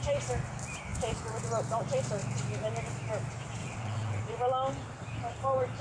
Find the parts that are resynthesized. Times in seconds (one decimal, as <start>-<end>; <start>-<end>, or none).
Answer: 3.6-4.2